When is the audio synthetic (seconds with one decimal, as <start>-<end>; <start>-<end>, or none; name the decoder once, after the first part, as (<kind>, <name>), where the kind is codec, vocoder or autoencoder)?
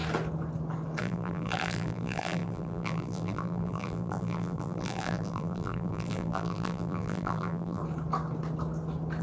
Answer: 1.0-7.8 (vocoder, BigVGAN v2)